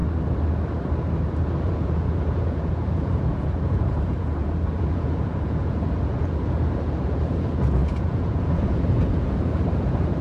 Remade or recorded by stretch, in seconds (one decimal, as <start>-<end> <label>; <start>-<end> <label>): 0.0-1.6 recorded; 1.6-10.2 remade